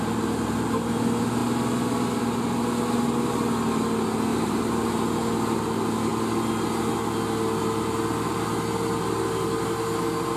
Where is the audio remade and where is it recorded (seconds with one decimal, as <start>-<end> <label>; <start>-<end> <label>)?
0.0-4.3 recorded; 4.3-5.0 remade; 5.0-10.4 recorded